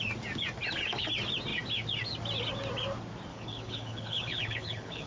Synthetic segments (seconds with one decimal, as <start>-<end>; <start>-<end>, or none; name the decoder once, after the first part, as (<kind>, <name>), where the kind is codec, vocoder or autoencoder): 3.3-5.1 (codec, HILCodec)